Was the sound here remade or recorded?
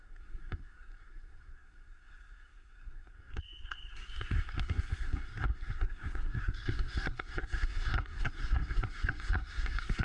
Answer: remade